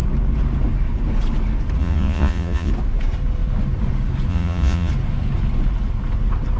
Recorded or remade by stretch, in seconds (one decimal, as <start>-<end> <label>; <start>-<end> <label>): 0.0-1.8 recorded; 1.8-2.7 remade; 2.7-4.3 recorded; 4.3-4.9 remade; 4.9-6.6 recorded